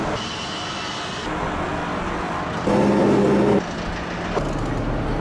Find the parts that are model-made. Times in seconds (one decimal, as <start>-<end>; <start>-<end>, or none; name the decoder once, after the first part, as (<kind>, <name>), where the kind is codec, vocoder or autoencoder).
none